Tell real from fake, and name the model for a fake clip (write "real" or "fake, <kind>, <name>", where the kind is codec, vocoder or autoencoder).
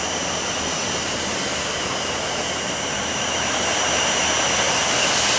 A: real